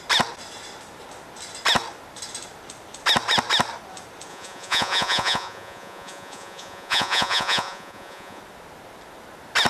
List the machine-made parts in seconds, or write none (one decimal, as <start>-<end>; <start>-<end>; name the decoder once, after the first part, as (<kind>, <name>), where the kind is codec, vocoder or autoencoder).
4.3-8.4 (vocoder, Vocos)